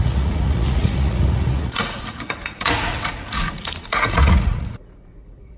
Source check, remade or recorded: remade